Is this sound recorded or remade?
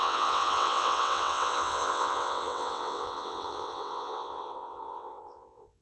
remade